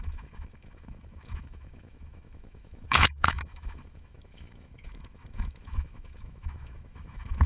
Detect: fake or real fake